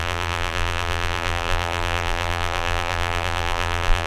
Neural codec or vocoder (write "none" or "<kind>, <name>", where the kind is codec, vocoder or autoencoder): vocoder, BigVGAN v2